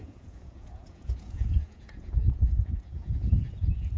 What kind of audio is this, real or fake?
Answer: fake